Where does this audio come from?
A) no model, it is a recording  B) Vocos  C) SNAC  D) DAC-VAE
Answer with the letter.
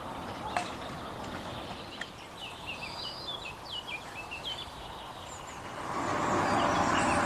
A